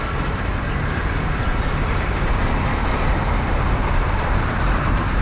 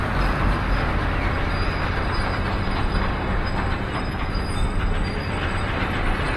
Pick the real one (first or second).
second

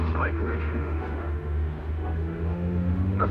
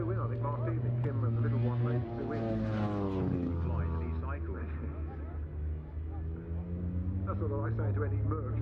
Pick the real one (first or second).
second